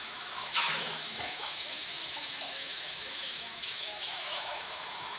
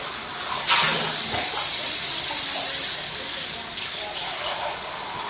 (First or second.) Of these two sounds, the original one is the second